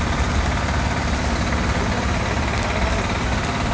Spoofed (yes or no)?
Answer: no